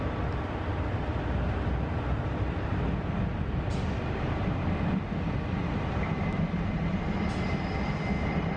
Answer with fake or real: real